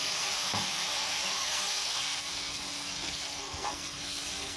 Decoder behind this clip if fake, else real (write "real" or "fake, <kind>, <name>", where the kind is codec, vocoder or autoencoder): fake, codec, SNAC